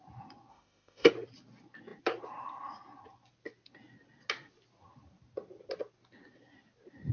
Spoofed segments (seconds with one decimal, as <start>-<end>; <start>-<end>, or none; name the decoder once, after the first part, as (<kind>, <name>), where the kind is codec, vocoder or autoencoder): 0.5-1.1 (autoencoder, DAC-VAE)